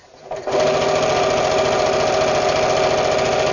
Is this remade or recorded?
recorded